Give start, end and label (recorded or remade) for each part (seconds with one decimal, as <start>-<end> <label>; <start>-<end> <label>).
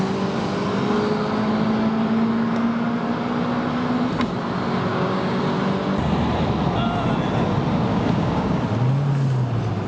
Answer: 0.0-4.9 recorded; 4.9-5.4 remade; 5.4-7.9 recorded; 7.9-8.6 remade; 8.6-9.9 recorded